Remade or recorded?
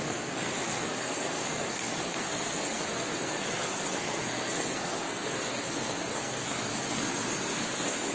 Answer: remade